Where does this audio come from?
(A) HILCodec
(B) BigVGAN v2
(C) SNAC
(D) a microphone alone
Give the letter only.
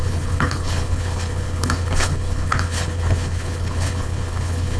A